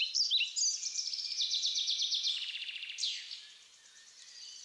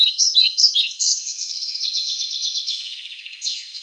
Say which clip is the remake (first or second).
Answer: second